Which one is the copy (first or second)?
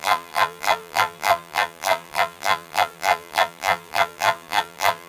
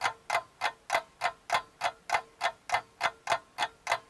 first